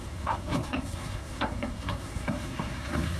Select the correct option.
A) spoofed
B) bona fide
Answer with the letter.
A